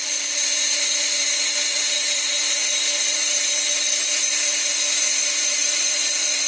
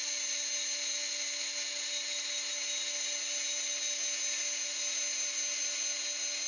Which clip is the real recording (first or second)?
second